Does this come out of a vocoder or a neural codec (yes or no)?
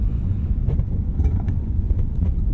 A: yes